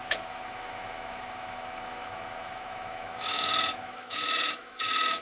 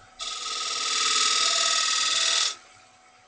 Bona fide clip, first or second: second